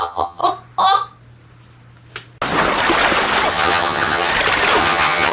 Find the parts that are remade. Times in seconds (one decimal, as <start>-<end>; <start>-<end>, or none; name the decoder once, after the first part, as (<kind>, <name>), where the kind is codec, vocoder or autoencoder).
0.0-0.4 (vocoder, HiFi-GAN); 3.5-4.3; 4.8-5.3